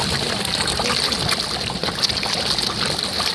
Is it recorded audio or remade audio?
recorded